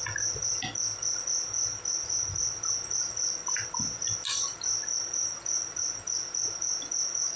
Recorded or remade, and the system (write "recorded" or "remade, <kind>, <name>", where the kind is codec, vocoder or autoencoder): recorded